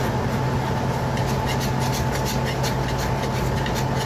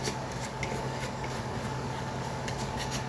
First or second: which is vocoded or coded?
second